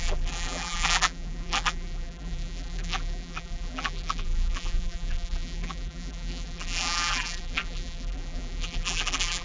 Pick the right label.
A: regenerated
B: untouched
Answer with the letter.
A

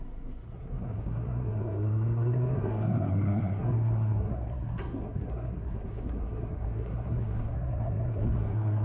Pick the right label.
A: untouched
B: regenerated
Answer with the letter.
B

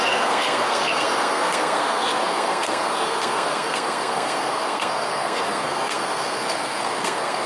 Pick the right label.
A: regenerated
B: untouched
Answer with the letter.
A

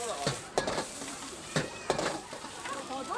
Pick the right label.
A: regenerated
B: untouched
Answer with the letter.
A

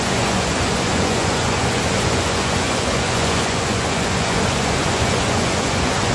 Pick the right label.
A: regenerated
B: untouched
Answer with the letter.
A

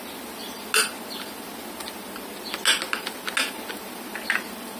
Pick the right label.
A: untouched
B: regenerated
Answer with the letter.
A